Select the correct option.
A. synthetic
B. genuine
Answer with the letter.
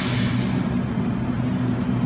B